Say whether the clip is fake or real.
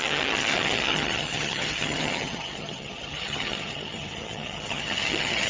fake